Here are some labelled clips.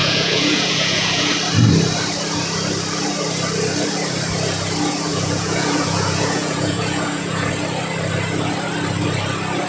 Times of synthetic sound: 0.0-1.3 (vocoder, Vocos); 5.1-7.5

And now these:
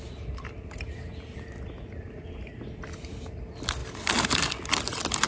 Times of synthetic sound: 1.1-2.5 (vocoder, BigVGAN v2); 3.8-4.6

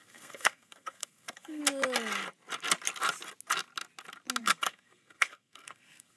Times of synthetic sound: 0.0-1.6 (codec, SNAC); 4.4-6.2

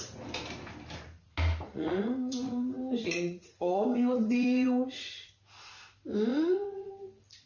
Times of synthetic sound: 1.7-5.3 (vocoder, Vocos); 6.3-6.9

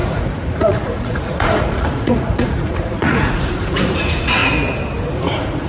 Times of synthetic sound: 0.0-4.4 (vocoder, Vocos); 5.1-5.7

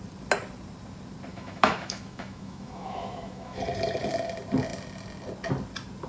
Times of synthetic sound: 1.3-3.6 (autoencoder, DAC-VAE)

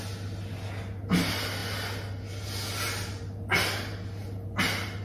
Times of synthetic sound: none